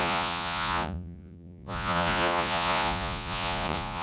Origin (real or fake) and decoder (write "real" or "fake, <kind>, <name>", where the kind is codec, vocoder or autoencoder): fake, vocoder, Vocos